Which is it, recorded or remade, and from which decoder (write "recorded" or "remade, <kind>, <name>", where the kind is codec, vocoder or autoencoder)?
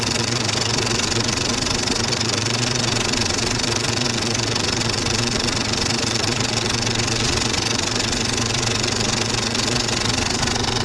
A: remade, vocoder, Vocos